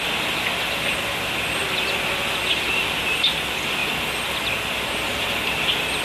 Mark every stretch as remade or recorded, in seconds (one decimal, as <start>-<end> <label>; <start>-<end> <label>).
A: 0.0-6.0 recorded